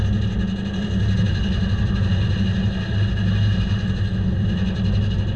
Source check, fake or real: real